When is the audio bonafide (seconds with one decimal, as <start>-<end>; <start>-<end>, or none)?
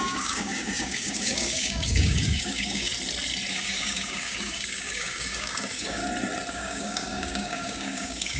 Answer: 2.9-3.5; 6.0-6.5